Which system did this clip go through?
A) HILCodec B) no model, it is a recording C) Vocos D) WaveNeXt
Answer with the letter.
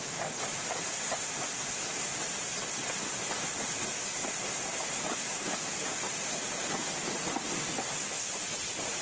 B